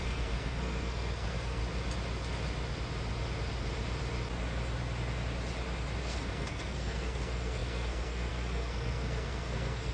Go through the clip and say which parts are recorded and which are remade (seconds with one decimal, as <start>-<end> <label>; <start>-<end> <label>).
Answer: 0.0-1.6 remade; 1.6-6.0 recorded; 6.0-9.9 remade